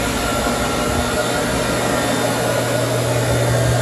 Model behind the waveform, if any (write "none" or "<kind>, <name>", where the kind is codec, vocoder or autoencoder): none